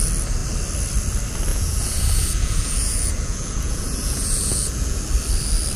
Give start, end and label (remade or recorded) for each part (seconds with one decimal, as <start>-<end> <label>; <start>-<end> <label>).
0.0-1.5 recorded; 1.5-5.0 remade; 5.0-5.8 recorded